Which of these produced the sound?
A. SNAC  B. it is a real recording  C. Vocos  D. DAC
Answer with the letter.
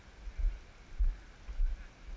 B